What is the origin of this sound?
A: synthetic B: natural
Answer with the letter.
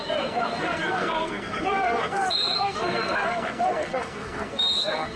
A